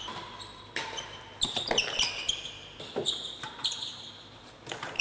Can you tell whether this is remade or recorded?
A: remade